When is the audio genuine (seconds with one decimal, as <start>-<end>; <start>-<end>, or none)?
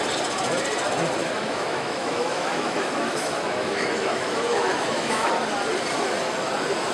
0.0-1.2; 5.3-6.9